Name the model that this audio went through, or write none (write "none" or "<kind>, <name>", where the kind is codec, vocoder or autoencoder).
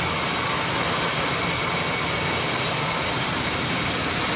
none